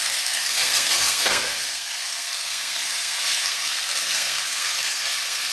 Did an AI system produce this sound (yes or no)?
yes